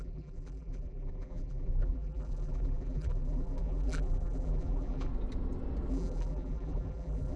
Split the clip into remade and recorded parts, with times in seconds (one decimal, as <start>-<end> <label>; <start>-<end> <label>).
0.0-5.1 remade; 5.1-5.9 recorded; 5.9-7.4 remade